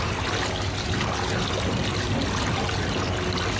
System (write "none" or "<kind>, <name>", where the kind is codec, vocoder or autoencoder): none